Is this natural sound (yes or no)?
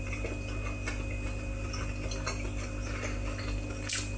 yes